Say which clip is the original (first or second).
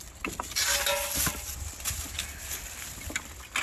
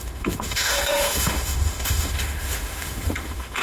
first